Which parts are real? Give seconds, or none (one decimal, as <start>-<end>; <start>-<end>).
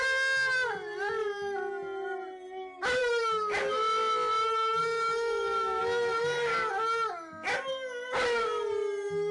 0.0-4.8; 5.8-9.3